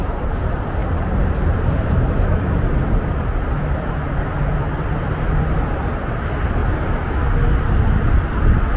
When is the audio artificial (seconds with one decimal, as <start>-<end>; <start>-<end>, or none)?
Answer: none